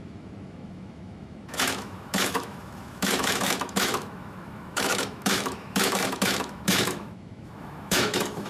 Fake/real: fake